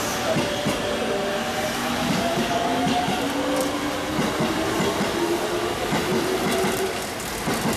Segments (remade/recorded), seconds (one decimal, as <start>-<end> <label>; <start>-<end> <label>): 0.0-1.8 recorded; 1.8-3.0 remade; 3.0-7.8 recorded